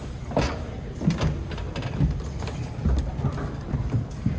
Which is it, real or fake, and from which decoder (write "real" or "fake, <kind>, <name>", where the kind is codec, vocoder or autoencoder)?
real